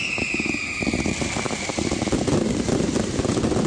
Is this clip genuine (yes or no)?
yes